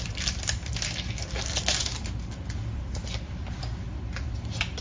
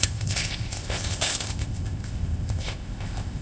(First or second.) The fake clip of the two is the second